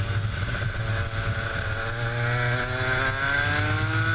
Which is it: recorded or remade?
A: recorded